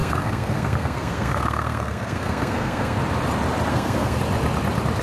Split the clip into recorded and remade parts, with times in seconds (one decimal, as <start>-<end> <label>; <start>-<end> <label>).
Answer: 0.0-3.0 remade; 3.0-3.7 recorded; 3.7-4.2 remade; 4.2-5.0 recorded